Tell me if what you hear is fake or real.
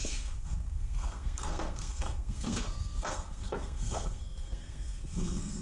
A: fake